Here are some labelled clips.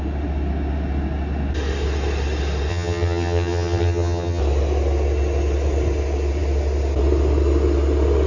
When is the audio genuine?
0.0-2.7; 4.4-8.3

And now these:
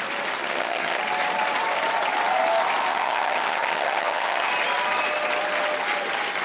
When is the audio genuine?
0.0-0.4; 1.0-2.9; 4.5-6.4

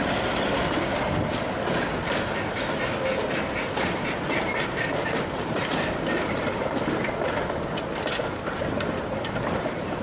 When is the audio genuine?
0.0-10.0

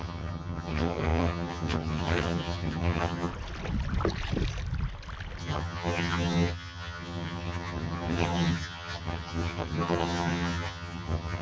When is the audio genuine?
3.3-5.4

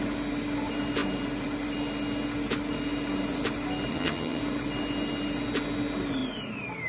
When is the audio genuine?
0.0-3.9; 4.4-6.9